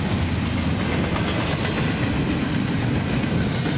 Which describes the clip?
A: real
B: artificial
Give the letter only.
A